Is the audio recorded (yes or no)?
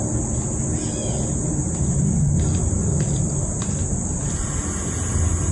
yes